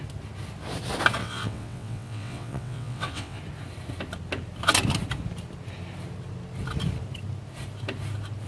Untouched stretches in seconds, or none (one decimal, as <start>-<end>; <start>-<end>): 0.0-1.2; 3.4-8.5